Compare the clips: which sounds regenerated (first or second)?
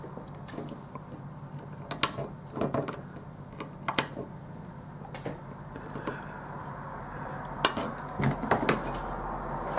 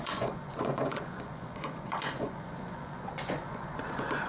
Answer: second